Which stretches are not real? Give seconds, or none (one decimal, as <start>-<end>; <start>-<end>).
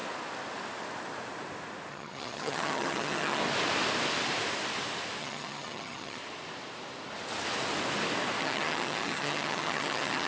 1.9-3.4; 5.2-6.2; 8.4-10.3